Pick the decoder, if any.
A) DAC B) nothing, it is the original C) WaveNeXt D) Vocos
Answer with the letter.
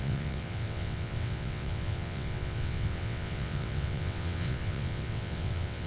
C